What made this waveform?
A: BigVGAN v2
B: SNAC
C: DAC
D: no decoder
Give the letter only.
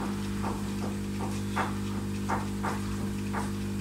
A